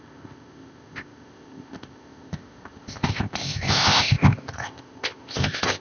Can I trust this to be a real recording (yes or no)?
no